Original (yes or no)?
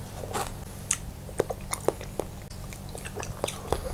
yes